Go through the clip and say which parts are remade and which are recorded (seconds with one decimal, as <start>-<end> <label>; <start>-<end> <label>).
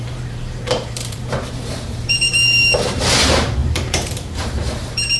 0.0-5.2 remade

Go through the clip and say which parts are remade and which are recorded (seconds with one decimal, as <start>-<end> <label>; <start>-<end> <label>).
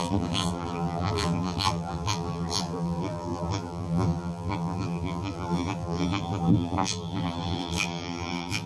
0.0-8.7 remade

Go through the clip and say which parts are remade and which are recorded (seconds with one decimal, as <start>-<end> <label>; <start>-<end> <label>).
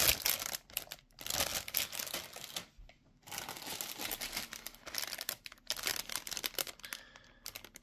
0.0-7.8 recorded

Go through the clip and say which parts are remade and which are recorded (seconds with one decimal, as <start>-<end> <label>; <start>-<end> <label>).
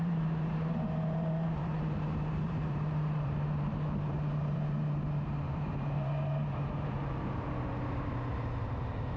0.0-9.2 remade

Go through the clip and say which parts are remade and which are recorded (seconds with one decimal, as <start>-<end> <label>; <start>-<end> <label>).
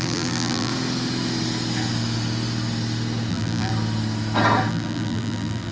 0.0-0.7 remade; 0.7-3.3 recorded; 3.3-3.7 remade; 3.7-4.7 recorded; 4.7-5.7 remade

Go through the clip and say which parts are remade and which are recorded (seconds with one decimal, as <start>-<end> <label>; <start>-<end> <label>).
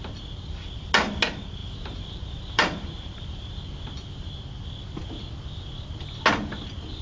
0.0-1.6 recorded; 1.6-3.5 remade; 3.5-7.0 recorded